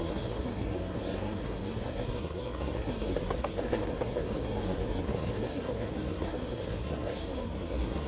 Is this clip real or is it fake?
fake